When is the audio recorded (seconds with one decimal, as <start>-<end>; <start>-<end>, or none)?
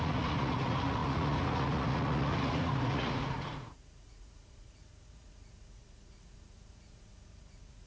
none